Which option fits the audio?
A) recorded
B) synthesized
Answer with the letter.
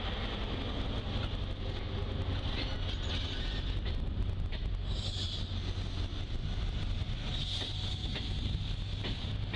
A